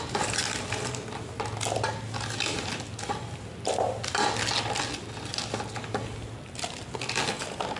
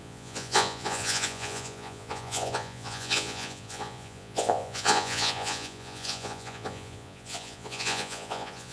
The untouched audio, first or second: first